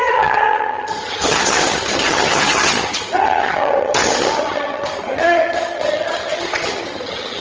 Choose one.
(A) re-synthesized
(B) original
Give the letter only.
A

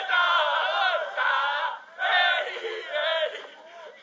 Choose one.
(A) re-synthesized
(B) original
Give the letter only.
B